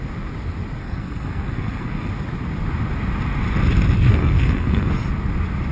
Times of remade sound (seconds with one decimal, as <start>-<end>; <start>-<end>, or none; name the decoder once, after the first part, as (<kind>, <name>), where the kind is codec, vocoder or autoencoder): 0.8-2.1 (codec, SNAC); 4.1-4.9